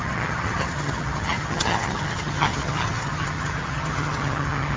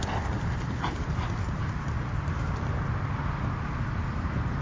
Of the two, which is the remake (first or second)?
first